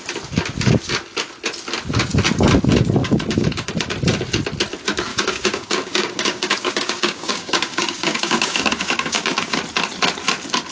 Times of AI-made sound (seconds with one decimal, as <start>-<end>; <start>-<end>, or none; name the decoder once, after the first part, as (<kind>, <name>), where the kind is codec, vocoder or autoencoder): 3.0-3.7 (codec, DAC); 5.1-9.6